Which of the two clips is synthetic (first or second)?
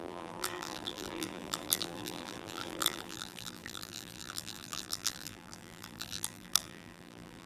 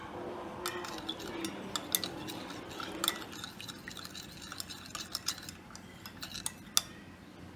first